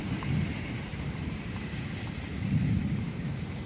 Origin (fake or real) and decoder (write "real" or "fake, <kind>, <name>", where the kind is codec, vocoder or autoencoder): fake, vocoder, BigVGAN v2